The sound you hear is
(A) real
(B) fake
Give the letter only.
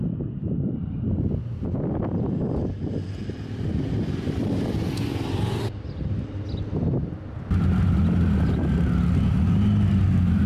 A